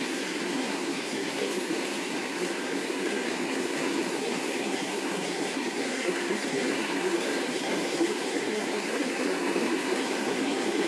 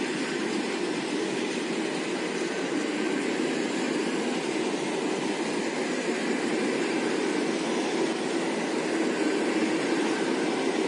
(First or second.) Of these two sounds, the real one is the second